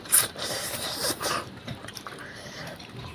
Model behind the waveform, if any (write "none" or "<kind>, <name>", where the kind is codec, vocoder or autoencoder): vocoder, BigVGAN v2